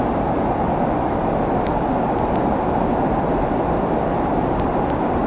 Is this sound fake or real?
real